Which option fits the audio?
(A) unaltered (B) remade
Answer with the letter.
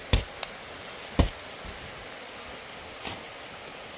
A